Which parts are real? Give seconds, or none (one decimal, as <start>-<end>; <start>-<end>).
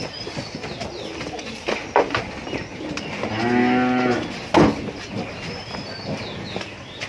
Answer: 0.0-2.7; 3.3-7.1